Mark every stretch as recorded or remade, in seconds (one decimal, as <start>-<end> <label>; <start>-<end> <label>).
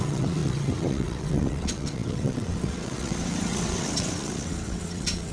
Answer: 0.0-5.3 remade